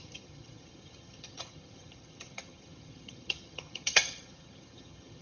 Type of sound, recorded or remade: remade